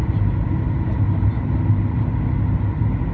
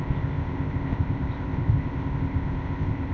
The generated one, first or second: second